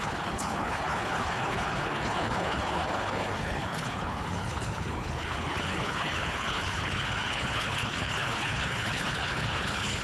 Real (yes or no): no